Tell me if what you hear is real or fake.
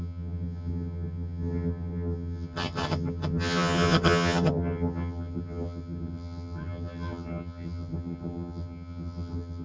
fake